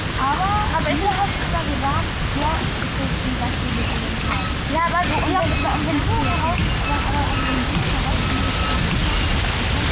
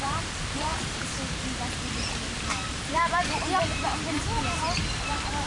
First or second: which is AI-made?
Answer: second